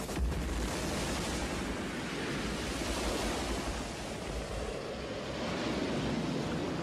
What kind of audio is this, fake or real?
real